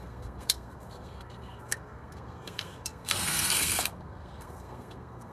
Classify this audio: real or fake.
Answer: fake